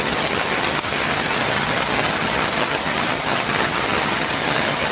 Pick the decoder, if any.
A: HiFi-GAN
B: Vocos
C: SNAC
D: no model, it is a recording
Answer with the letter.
A